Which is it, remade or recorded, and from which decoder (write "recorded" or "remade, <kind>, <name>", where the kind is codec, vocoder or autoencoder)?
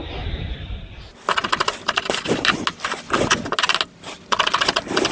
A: recorded